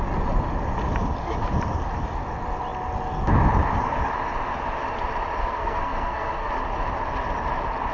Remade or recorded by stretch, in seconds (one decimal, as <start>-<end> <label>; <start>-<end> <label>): 0.0-5.4 recorded; 5.4-6.5 remade; 6.5-7.9 recorded